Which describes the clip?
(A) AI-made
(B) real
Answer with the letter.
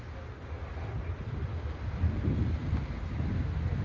B